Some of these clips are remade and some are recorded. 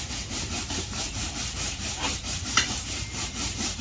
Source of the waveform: remade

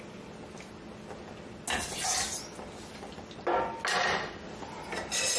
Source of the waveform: recorded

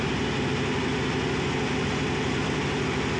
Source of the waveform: recorded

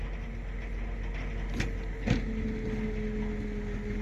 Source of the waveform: recorded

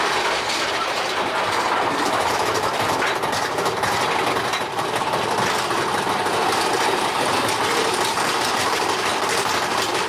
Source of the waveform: remade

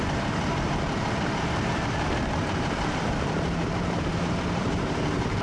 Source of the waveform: remade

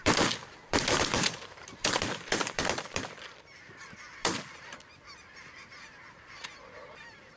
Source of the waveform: remade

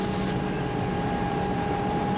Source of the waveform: remade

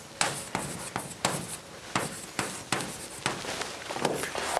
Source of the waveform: recorded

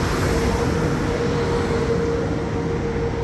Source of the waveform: recorded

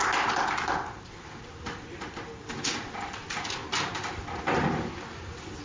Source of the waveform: recorded